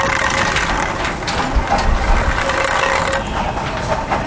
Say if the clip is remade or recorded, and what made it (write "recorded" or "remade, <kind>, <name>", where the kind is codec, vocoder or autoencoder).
recorded